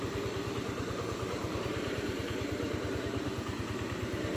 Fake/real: fake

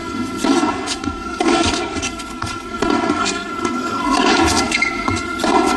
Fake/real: fake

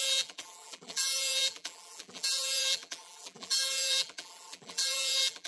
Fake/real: fake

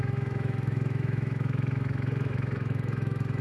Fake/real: fake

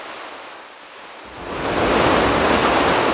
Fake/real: real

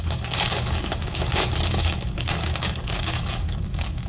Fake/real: fake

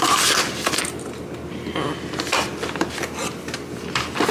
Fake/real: real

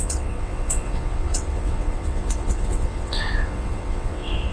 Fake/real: fake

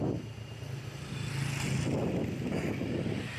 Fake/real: real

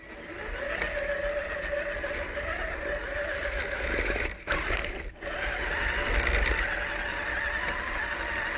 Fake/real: real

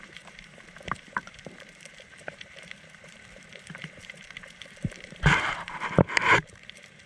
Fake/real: fake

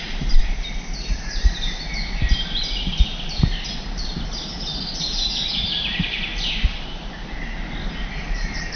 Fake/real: real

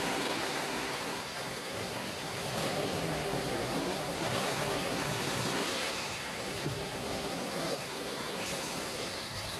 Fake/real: fake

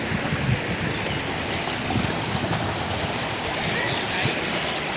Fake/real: real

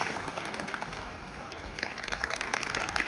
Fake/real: fake